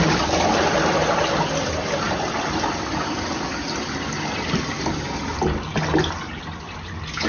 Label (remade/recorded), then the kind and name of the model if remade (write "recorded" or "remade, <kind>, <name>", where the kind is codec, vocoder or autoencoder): recorded